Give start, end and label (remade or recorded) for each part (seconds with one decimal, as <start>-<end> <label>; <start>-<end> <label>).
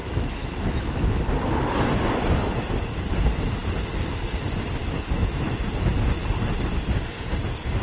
0.0-1.3 remade; 1.3-4.8 recorded; 4.8-5.4 remade; 5.4-7.8 recorded